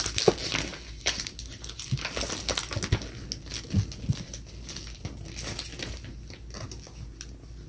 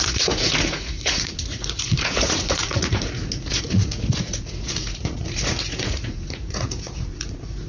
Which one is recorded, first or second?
first